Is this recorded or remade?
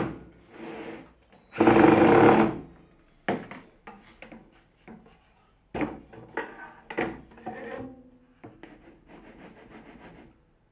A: recorded